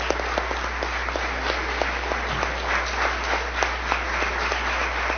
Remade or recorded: recorded